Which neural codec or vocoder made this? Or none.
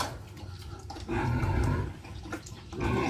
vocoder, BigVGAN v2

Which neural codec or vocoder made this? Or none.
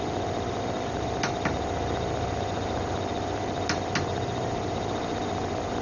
none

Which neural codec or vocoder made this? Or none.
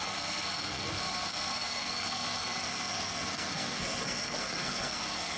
codec, SNAC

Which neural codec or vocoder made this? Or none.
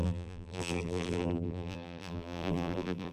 vocoder, BigVGAN v2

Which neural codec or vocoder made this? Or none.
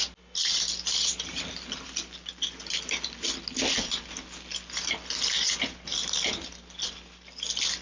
none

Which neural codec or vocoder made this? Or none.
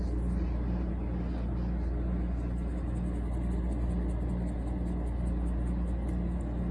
none